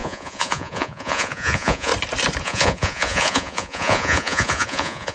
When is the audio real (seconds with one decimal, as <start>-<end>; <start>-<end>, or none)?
1.9-2.4